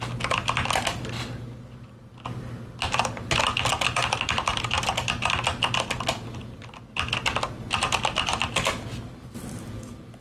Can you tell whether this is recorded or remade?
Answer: recorded